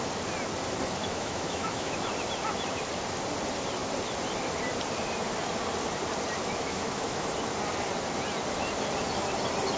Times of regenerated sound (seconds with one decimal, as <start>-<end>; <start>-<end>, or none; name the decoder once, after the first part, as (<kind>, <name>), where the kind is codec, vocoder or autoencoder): 1.0-2.1 (autoencoder, DAC-VAE); 6.4-7.3